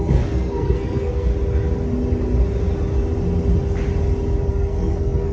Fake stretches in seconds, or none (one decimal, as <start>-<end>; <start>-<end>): 0.0-1.3; 4.5-5.3